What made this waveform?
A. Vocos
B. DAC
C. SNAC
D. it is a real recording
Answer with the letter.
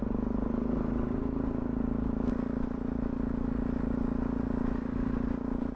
D